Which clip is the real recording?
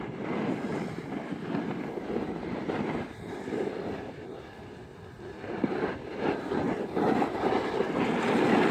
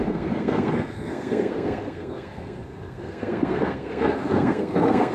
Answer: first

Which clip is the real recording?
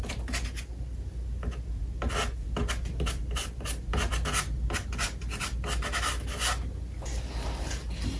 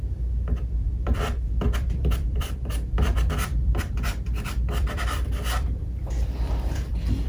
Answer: first